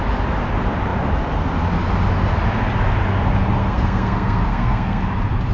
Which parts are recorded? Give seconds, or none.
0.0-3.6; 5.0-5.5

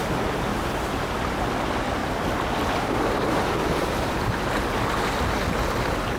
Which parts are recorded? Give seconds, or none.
0.0-0.5; 1.3-2.0; 2.8-3.6; 4.2-6.2